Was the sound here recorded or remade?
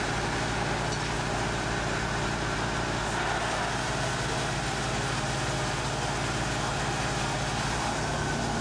recorded